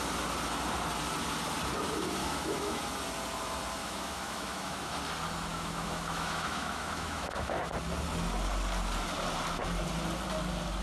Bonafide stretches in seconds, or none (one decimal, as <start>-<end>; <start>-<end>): 0.0-2.2; 2.8-3.8; 5.0-5.5; 7.6-10.8